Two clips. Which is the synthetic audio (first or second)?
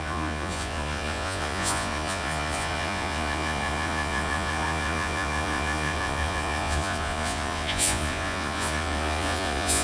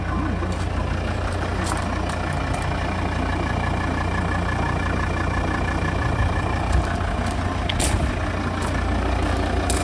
first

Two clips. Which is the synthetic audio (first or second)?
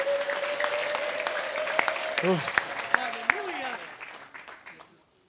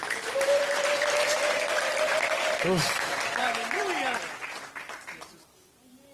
second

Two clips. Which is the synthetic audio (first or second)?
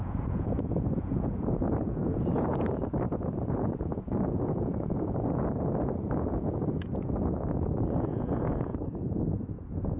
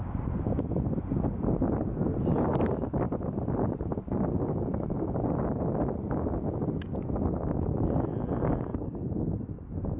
first